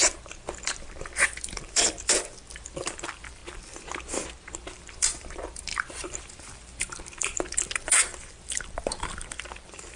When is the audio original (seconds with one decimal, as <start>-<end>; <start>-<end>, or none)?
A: 3.4-4.6